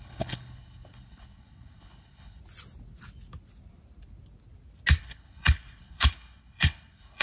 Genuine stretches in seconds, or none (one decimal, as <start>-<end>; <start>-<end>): 2.4-5.0